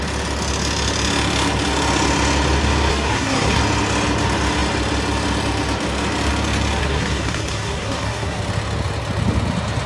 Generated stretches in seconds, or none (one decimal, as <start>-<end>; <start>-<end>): 2.9-3.6; 6.8-8.4